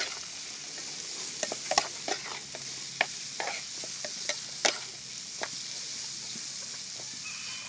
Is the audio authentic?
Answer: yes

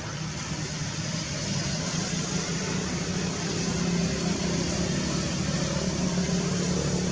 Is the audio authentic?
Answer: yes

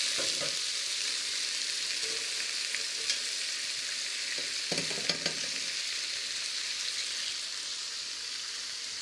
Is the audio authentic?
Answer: yes